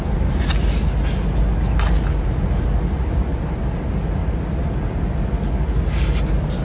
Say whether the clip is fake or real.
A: real